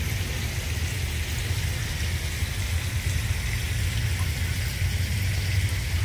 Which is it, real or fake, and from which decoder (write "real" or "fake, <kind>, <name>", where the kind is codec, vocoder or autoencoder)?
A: real